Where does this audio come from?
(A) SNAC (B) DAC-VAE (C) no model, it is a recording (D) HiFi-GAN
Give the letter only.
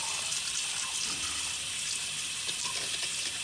C